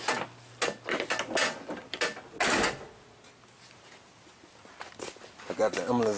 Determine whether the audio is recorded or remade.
recorded